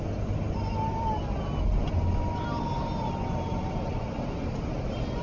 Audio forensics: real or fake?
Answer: real